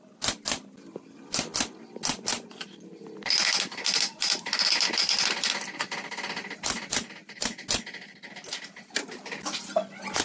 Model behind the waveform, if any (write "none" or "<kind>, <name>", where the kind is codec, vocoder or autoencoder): none